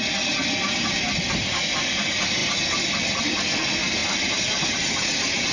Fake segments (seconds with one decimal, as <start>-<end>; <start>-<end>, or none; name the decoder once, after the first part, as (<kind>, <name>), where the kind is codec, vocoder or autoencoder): none